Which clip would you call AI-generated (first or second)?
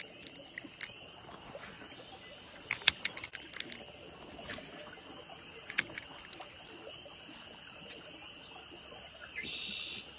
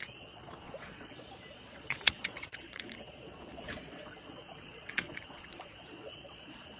second